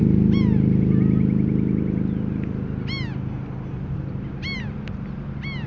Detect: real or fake real